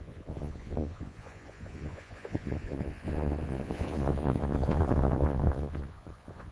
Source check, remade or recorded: remade